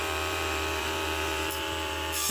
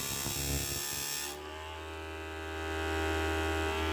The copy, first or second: first